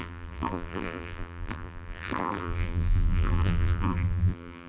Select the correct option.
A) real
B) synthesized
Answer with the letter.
B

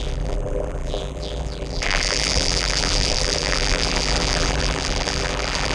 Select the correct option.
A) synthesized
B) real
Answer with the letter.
A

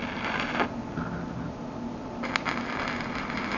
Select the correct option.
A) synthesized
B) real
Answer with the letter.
B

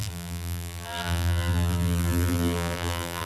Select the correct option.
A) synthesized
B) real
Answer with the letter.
A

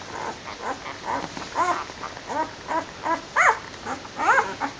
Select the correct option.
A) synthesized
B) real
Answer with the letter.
B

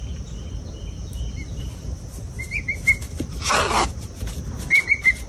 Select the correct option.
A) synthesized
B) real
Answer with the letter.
B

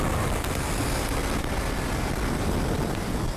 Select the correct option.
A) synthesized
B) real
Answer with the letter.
B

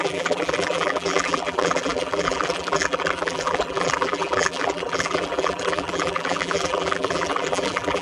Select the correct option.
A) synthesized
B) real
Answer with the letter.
A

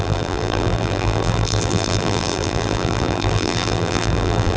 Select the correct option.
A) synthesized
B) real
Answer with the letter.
A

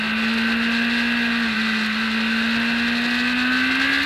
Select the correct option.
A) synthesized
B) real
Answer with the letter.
B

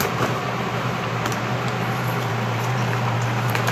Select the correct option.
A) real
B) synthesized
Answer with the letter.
B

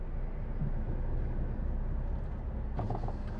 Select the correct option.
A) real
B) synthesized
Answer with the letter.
A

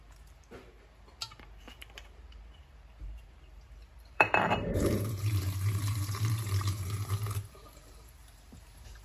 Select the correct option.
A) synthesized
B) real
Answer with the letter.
A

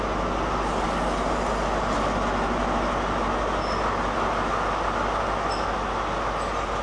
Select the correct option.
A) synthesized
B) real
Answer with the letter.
B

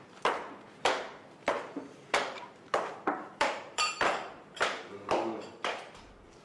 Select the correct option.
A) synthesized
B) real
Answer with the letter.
A